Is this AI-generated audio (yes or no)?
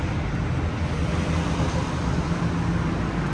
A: no